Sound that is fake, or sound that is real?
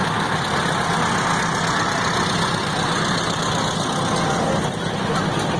real